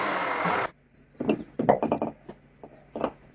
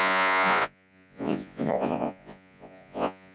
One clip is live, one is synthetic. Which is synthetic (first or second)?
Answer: second